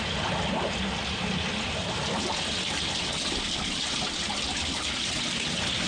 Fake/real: real